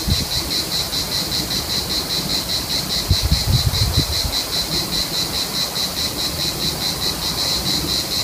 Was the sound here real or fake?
real